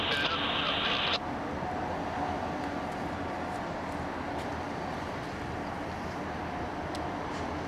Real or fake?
real